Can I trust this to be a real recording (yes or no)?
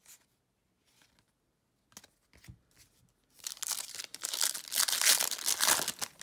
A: yes